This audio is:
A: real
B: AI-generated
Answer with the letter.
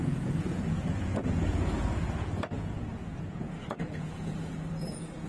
B